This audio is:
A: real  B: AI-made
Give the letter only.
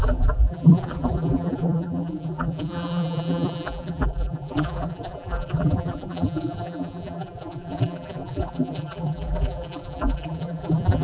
B